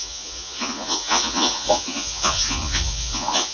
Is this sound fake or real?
fake